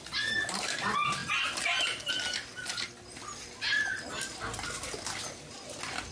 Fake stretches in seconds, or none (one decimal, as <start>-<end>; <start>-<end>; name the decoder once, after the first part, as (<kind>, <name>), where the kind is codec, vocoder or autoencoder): none